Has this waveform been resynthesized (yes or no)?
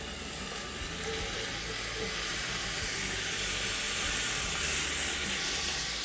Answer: no